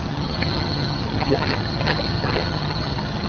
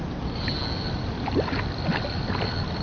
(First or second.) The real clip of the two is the second